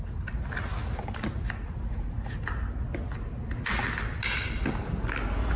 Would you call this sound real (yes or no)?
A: yes